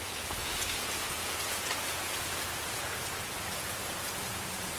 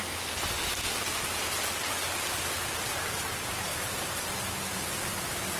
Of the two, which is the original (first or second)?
second